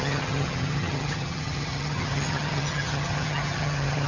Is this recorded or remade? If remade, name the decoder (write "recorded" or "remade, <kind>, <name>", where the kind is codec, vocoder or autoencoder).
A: remade, vocoder, HiFi-GAN